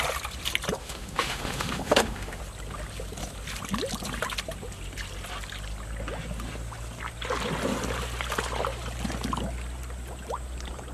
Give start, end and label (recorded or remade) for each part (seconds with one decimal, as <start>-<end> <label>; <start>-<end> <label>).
0.0-0.8 recorded; 0.8-2.4 remade; 2.4-10.9 recorded